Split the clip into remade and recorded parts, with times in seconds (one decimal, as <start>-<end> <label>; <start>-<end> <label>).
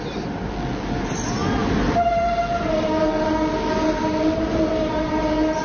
0.0-5.6 recorded